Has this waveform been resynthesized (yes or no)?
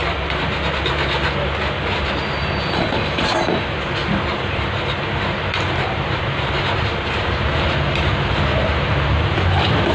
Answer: yes